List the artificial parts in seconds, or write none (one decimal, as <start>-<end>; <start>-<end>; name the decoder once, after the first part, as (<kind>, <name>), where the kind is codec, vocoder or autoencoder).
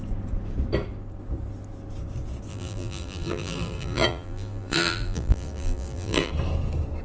2.5-6.3 (vocoder, BigVGAN v2)